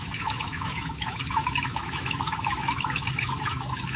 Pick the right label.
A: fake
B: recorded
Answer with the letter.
A